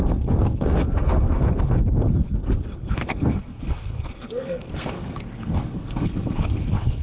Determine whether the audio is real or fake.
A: fake